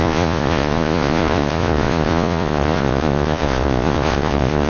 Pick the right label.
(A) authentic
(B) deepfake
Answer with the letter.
B